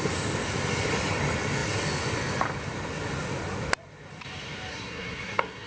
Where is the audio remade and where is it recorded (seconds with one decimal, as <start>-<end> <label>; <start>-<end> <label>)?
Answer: 0.0-4.7 recorded; 4.7-5.7 remade